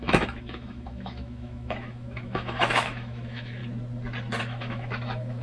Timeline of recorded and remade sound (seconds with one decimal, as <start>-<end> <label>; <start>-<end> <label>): 0.0-3.6 remade; 3.6-4.4 recorded; 4.4-5.4 remade